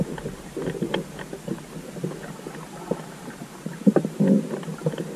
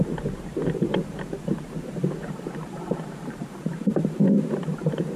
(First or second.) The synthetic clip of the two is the second